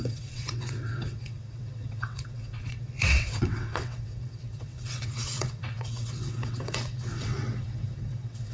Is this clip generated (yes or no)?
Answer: yes